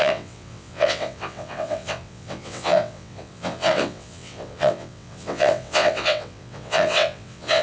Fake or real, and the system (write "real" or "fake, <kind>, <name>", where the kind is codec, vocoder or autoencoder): fake, vocoder, WaveNeXt